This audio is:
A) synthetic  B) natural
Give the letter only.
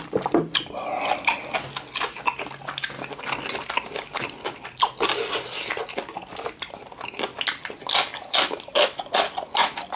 B